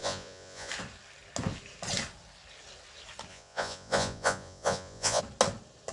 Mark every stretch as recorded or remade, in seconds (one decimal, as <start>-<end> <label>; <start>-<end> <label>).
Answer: 0.0-0.7 remade; 0.7-3.3 recorded; 3.3-5.2 remade; 5.2-5.9 recorded